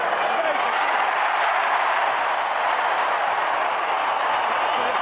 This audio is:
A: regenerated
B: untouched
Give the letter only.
B